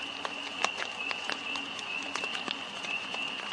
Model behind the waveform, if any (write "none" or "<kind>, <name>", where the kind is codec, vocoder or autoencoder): vocoder, Vocos